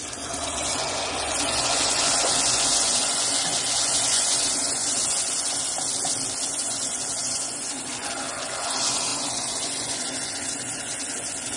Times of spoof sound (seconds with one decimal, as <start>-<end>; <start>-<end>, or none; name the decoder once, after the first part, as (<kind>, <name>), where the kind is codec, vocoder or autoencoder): 0.0-5.6 (vocoder, Vocos); 6.4-11.6